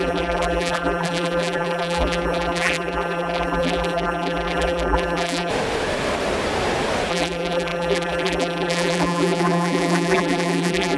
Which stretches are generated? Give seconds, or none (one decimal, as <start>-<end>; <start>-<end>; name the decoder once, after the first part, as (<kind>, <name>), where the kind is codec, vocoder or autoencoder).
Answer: 0.0-5.5 (vocoder, BigVGAN v2); 7.1-11.0